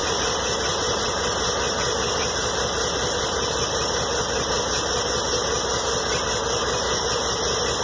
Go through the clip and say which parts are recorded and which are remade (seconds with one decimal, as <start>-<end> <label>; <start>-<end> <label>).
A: 0.0-4.5 remade; 4.5-7.8 recorded